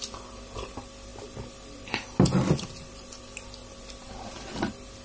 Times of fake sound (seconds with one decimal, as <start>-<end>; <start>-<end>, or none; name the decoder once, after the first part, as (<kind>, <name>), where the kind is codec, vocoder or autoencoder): none